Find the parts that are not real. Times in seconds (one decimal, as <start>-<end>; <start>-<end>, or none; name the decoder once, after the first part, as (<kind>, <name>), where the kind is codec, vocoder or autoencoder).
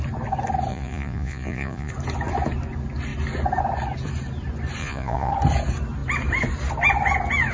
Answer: 0.7-1.9 (vocoder, Vocos); 4.8-5.3